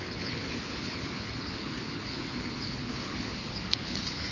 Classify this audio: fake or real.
fake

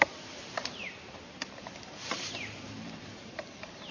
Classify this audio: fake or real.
fake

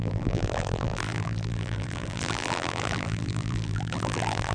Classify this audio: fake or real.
fake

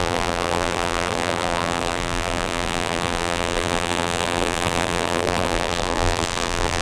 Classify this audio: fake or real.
fake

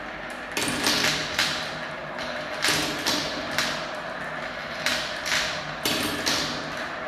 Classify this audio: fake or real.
real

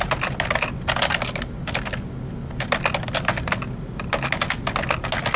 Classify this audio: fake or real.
real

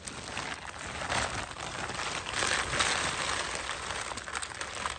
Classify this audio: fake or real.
real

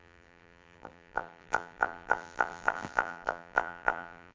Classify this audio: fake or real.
fake